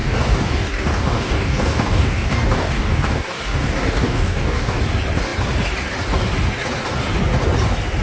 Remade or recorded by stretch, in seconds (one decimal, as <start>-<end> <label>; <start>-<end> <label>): 0.0-4.8 remade; 4.8-8.0 recorded